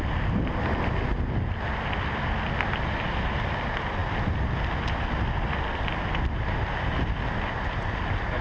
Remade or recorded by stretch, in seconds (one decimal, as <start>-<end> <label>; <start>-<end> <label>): 0.0-8.4 recorded